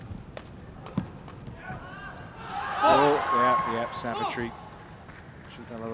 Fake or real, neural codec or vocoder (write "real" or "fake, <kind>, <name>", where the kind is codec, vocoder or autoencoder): real